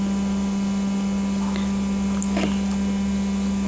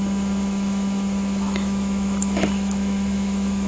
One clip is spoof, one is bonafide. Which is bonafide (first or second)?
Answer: first